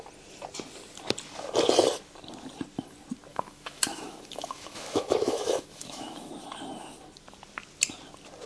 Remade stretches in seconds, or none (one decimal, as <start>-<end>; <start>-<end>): 3.3-6.3